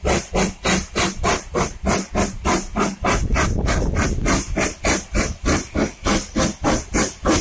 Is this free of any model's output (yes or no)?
yes